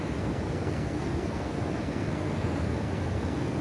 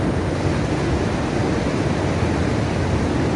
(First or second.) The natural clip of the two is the second